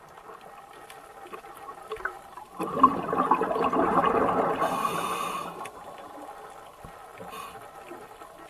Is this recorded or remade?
recorded